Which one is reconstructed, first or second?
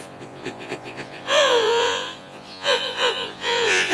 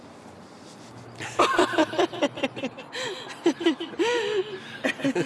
first